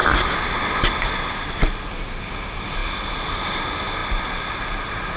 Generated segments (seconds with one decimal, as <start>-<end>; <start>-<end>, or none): none